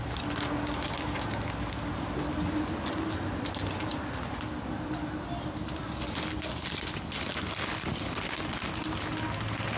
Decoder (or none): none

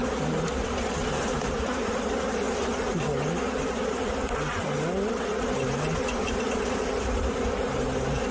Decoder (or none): none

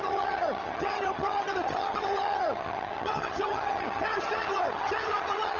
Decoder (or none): vocoder, HiFi-GAN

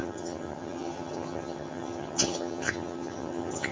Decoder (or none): vocoder, HiFi-GAN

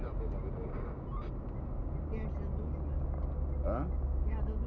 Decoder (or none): none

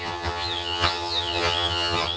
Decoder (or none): vocoder, HiFi-GAN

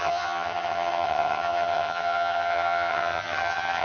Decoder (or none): vocoder, HiFi-GAN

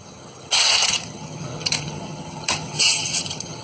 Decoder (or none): vocoder, HiFi-GAN